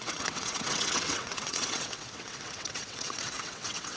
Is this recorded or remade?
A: remade